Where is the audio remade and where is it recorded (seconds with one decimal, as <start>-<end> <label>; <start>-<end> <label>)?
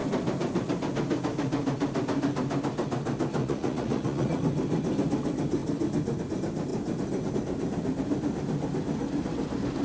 0.0-3.4 recorded; 3.4-4.4 remade; 4.4-9.8 recorded